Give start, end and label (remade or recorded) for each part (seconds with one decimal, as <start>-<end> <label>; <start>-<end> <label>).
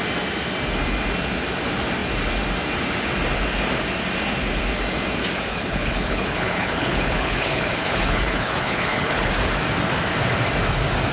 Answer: 0.0-5.5 recorded; 5.5-9.3 remade; 9.3-11.1 recorded